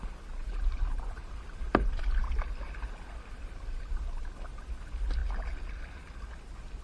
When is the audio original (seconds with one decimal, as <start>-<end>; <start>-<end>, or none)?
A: 0.0-0.4; 2.0-6.8